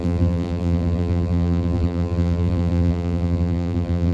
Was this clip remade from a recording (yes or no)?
yes